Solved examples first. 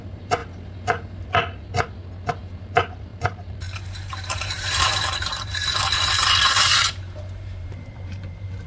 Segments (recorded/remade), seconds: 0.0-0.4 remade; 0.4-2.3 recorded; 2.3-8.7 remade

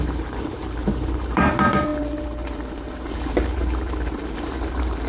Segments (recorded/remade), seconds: 0.0-5.1 remade

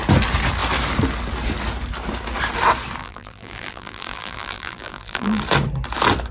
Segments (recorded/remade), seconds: 0.0-3.0 recorded; 3.0-5.4 remade; 5.4-6.3 recorded

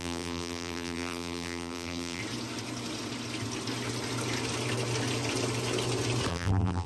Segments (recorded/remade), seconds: 0.0-2.2 remade; 2.2-6.3 recorded; 6.3-6.9 remade

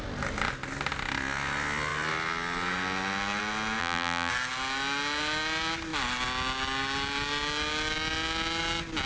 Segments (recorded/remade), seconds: 0.0-3.8 recorded; 3.8-4.3 remade; 4.3-9.1 recorded

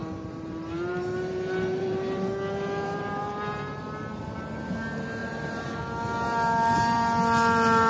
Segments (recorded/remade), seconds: 0.0-3.8 remade; 3.8-5.2 recorded; 5.2-5.8 remade; 5.8-7.9 recorded

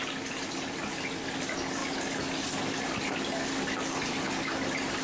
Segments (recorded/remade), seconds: 0.0-5.0 recorded

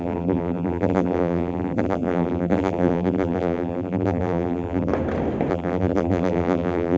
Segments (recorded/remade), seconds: 0.0-4.9 remade; 4.9-5.5 recorded; 5.5-7.0 remade